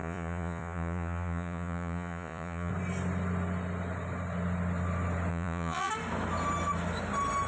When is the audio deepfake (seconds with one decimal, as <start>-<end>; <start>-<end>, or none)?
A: 0.0-2.7; 5.3-5.9